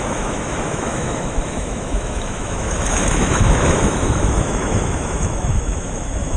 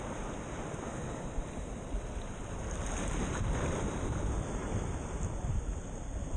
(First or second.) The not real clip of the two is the first